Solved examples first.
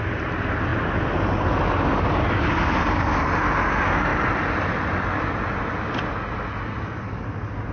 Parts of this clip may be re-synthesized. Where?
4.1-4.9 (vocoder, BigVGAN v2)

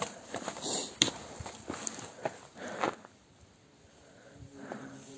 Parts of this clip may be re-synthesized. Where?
0.0-0.8 (vocoder, BigVGAN v2); 3.9-5.2

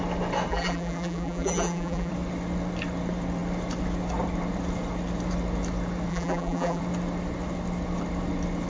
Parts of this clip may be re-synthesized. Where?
0.5-2.1 (vocoder, BigVGAN v2); 6.1-6.8

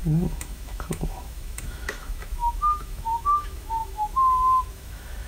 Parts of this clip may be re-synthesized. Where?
0.0-5.3 (autoencoder, DAC-VAE)

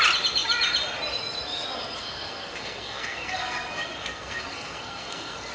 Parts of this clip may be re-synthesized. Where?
2.0-5.5 (codec, SNAC)

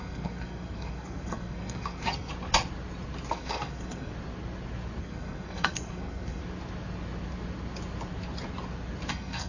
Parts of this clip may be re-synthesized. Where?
0.0-2.3 (codec, SNAC); 3.3-4.1; 5.0-6.4; 9.1-9.5

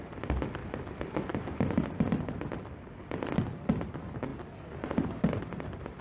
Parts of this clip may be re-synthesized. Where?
none

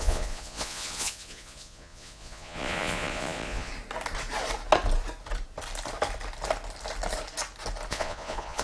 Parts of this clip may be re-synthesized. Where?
0.0-3.7 (vocoder, Vocos); 7.9-8.6